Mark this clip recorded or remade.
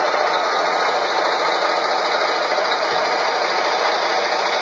remade